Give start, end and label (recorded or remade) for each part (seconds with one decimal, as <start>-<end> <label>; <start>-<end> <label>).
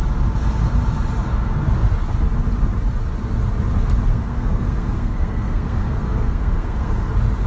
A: 0.0-4.1 recorded; 4.1-7.1 remade; 7.1-7.5 recorded